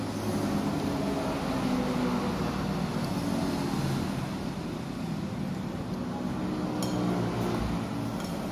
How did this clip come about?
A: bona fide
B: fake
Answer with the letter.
A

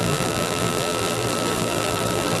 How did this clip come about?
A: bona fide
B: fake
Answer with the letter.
B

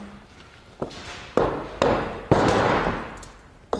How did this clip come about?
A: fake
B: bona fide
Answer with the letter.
A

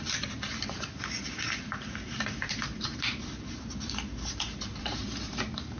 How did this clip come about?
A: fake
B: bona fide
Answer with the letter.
A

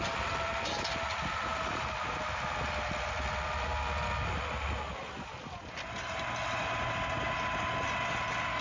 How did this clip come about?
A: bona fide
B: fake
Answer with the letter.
A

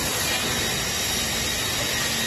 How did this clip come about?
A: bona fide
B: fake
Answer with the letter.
A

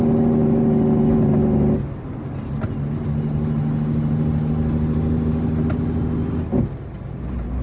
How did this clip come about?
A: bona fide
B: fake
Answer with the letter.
A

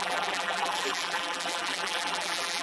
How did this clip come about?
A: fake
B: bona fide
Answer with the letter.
A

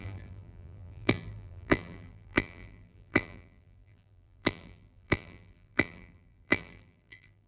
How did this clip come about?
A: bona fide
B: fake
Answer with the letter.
B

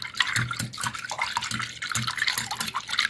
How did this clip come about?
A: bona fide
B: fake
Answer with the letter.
A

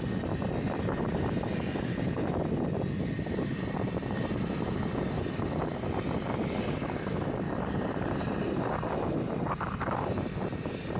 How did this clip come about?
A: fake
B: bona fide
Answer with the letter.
B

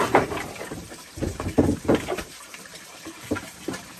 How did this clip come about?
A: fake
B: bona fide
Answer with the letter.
A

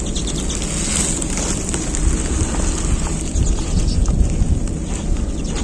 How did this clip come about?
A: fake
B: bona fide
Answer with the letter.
B